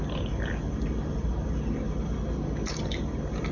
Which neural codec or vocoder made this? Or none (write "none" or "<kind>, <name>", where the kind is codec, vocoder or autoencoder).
none